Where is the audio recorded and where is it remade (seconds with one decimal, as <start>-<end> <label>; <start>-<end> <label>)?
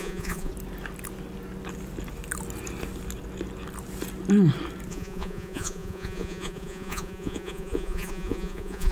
0.0-0.5 remade; 0.5-4.9 recorded; 4.9-8.9 remade